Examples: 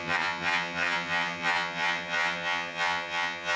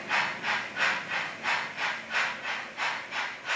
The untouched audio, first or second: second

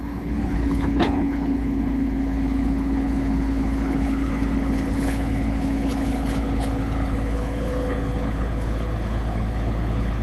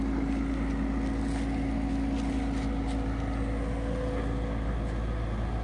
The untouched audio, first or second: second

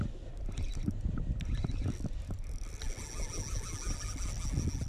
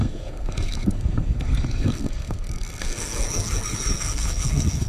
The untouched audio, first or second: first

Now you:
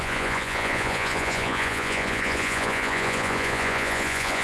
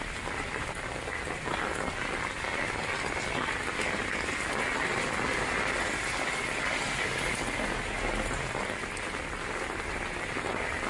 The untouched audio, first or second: second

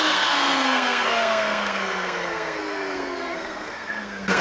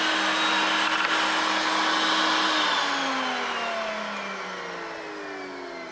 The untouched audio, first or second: second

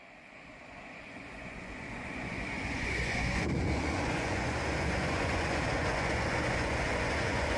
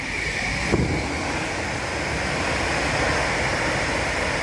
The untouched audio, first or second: second